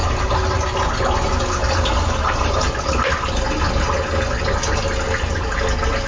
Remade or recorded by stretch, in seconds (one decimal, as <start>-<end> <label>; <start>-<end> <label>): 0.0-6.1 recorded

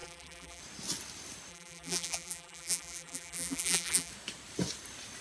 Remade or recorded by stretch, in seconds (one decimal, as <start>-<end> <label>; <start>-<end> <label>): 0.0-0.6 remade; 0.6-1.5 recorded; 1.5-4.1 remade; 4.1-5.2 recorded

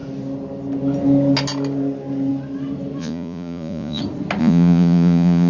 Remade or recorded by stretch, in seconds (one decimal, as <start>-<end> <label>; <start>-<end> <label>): 0.0-3.0 recorded; 3.0-4.0 remade; 4.0-4.4 recorded; 4.4-5.5 remade